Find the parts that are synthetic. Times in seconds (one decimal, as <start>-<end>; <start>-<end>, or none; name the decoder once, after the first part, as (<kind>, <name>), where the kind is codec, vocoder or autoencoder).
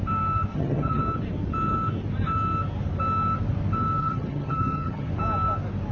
0.5-1.0 (vocoder, HiFi-GAN); 4.0-5.1